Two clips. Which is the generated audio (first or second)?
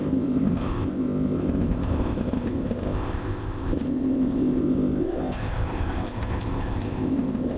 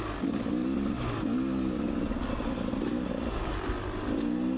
first